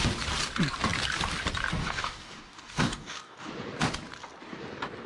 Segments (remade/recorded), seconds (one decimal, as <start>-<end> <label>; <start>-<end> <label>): 0.0-1.8 recorded; 1.8-3.5 remade; 3.5-5.1 recorded